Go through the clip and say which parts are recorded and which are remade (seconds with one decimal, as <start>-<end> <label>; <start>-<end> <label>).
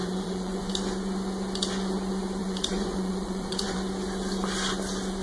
0.0-0.7 remade; 0.7-2.4 recorded; 2.4-3.8 remade; 3.8-5.2 recorded